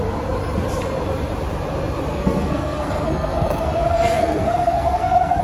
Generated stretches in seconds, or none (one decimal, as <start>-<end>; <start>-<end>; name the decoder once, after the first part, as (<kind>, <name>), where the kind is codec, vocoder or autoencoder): 2.1-5.4 (codec, SNAC)